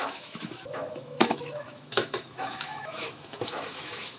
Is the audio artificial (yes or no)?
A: yes